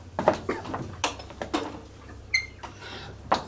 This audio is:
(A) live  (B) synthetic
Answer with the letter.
A